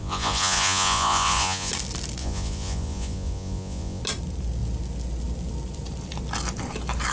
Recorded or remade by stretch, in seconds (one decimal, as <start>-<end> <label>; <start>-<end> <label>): 0.0-1.7 remade; 1.7-2.2 recorded; 2.2-4.0 remade; 4.0-7.1 recorded